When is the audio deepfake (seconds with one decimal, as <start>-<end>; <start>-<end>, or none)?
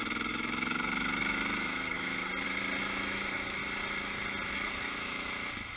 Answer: 0.0-2.3; 2.8-3.6; 4.5-5.8